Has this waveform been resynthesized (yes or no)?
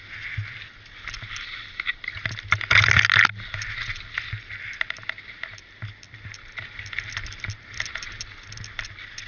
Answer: no